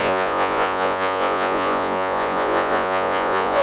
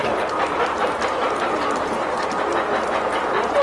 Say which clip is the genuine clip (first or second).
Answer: second